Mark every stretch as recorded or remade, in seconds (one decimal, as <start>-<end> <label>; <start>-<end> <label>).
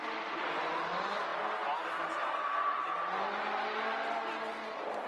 0.0-5.1 recorded